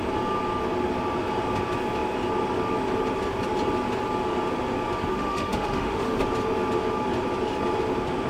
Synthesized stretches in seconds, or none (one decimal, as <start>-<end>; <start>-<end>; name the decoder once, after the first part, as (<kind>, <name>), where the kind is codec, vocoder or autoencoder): 5.1-6.2 (autoencoder, DAC-VAE)